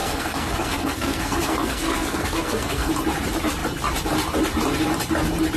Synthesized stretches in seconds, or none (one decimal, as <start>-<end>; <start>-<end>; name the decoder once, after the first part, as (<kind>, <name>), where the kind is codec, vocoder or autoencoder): 0.0-2.9 (codec, SNAC)